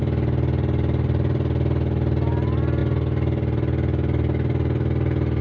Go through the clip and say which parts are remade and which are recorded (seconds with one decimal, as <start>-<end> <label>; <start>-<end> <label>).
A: 0.0-5.4 recorded